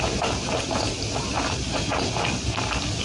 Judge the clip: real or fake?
real